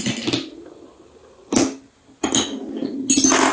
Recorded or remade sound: recorded